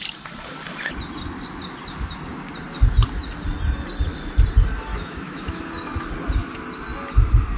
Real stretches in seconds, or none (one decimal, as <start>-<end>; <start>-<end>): 0.0-4.9; 5.6-7.6